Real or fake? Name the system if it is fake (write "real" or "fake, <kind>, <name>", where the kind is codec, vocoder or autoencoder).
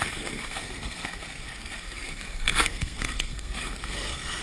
fake, codec, SNAC